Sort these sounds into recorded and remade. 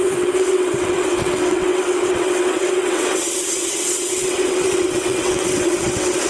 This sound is remade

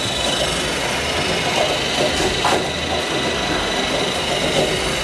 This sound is recorded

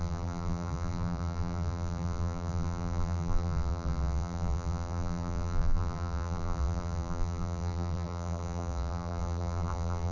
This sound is remade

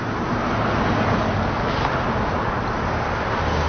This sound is recorded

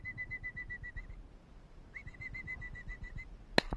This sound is recorded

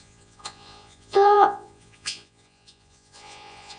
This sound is remade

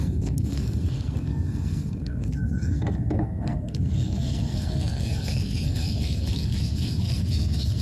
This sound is remade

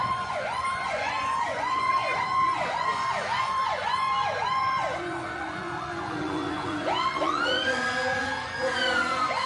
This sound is remade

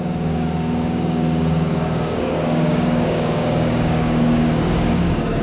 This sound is remade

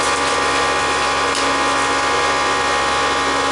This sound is recorded